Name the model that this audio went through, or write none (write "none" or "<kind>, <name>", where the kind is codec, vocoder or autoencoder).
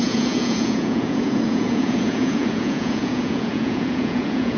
vocoder, Vocos